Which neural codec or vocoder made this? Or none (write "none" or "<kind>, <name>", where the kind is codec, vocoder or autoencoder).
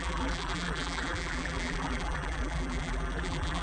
vocoder, BigVGAN v2